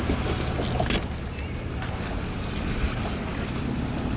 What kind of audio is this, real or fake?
real